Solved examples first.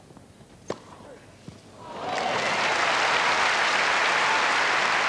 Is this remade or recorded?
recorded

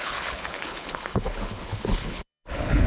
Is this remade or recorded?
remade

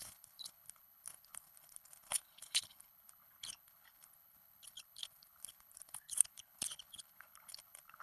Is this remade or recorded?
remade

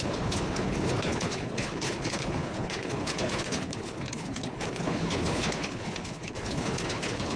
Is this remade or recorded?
remade